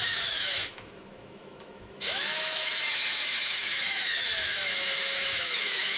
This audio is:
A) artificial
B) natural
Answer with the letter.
A